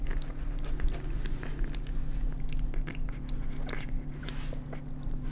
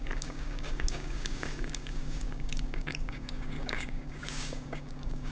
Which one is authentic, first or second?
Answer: first